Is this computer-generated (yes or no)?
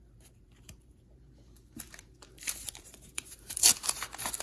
yes